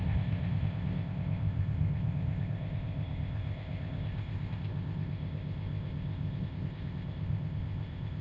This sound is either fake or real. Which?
fake